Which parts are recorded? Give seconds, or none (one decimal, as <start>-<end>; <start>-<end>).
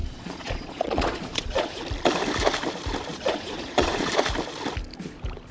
1.8-3.1; 4.1-5.5